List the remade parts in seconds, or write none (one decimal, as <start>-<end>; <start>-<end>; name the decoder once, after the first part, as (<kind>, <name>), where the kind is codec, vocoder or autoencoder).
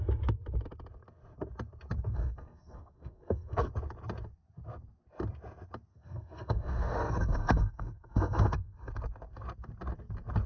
2.1-3.7 (codec, SNAC); 5.9-8.9